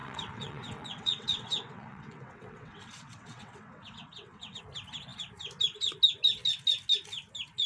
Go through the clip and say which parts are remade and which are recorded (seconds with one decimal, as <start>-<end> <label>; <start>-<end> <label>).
0.0-4.6 remade; 4.6-7.7 recorded

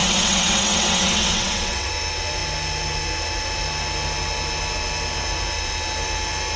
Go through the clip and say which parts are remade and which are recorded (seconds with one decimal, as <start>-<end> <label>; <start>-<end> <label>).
0.0-1.9 remade; 1.9-6.6 recorded

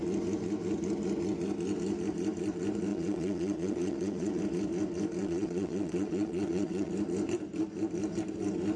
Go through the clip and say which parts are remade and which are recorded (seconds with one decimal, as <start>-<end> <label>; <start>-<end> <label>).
0.0-2.9 recorded; 2.9-4.4 remade; 4.4-5.2 recorded; 5.2-6.9 remade; 6.9-8.8 recorded

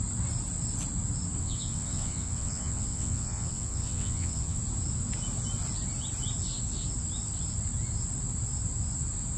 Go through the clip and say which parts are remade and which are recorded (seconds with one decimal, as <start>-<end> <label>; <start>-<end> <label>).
0.0-1.4 recorded; 1.4-4.6 remade; 4.6-9.4 recorded

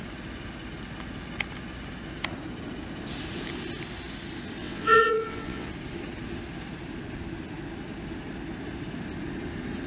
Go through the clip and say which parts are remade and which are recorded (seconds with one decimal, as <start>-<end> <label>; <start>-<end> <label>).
0.0-4.6 recorded; 4.6-5.7 remade; 5.7-9.9 recorded